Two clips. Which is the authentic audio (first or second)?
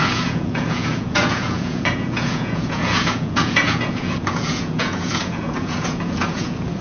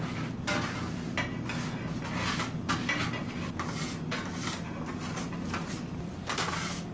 second